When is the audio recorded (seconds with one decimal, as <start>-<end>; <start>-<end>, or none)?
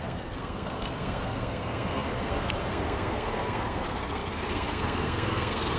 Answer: none